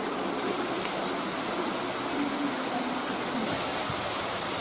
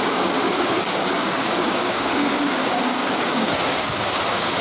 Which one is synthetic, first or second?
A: second